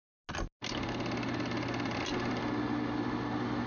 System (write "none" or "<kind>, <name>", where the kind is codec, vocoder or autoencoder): none